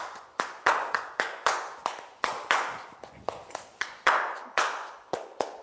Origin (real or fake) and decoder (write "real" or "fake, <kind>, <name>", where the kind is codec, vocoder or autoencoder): fake, vocoder, Vocos